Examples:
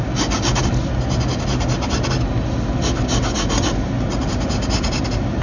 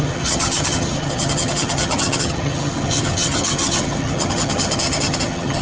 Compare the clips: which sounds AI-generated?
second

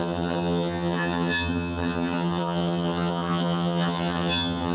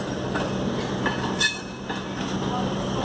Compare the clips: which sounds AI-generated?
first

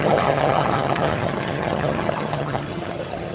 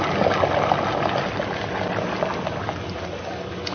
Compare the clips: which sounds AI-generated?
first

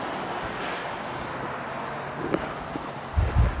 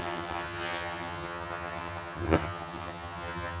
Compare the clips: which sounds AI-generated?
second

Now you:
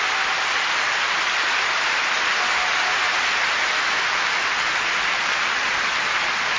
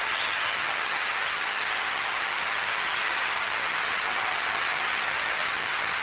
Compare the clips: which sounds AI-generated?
second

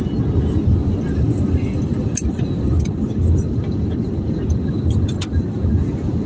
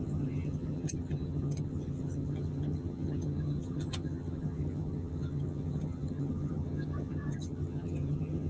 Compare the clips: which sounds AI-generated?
second